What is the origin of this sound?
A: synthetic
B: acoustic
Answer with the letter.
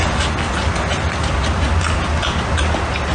B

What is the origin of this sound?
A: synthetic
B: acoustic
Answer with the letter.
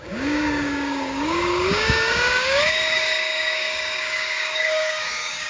A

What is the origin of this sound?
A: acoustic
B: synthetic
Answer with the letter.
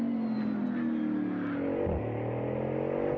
A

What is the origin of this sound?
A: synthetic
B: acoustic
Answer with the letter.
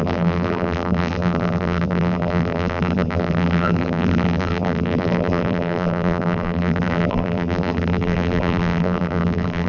A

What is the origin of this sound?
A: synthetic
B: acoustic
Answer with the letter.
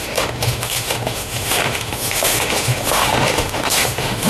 A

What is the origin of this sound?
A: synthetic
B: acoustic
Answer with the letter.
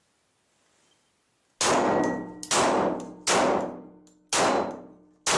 B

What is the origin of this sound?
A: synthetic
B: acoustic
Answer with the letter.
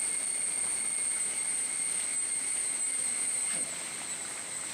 B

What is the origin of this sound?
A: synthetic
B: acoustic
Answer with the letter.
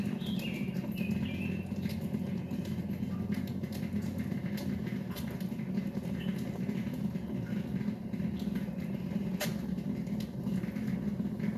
B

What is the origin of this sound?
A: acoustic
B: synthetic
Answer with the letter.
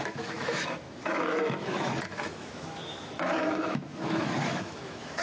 B